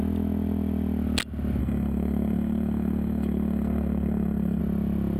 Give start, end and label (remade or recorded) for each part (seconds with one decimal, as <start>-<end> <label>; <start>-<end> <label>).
0.0-1.6 recorded; 1.6-4.6 remade; 4.6-5.2 recorded